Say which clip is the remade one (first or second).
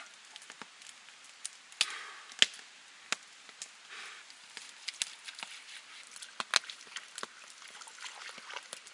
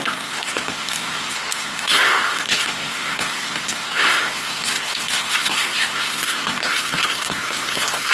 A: second